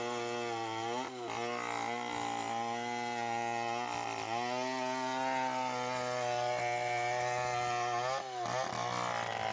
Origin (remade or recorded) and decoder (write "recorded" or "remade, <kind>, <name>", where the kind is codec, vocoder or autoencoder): recorded